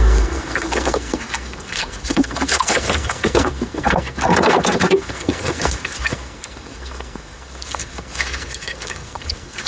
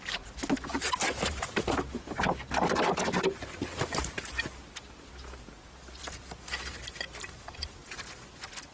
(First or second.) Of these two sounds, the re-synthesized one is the first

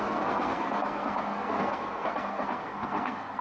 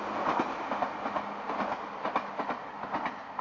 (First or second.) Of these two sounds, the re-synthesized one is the first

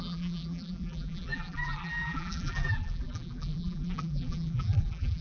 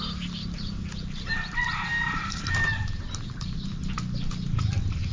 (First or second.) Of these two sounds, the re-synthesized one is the first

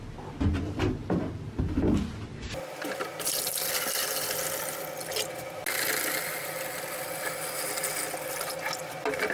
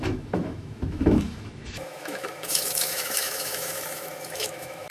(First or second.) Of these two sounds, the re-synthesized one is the second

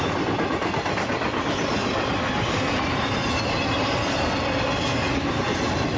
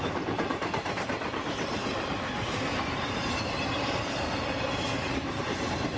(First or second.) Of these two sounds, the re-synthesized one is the second